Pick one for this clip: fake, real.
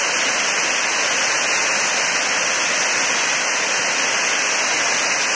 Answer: real